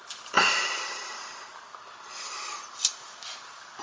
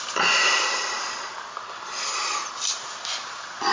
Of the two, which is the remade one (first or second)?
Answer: first